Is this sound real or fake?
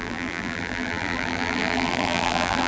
fake